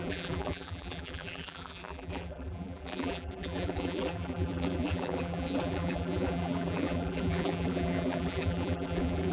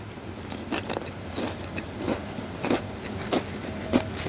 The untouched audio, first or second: second